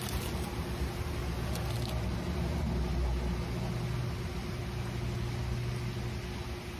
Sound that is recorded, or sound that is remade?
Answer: recorded